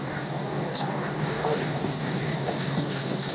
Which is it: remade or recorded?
remade